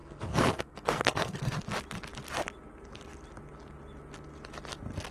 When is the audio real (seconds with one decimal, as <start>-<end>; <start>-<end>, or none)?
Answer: 1.5-5.1